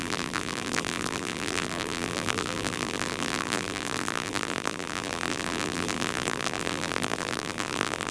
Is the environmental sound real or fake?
fake